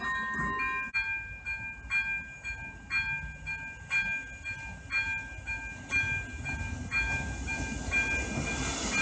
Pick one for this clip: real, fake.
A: real